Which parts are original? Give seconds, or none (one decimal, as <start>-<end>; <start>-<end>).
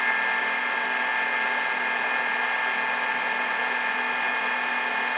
0.0-5.2